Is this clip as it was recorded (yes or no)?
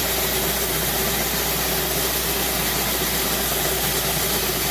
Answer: yes